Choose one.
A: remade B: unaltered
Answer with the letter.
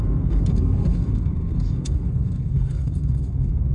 A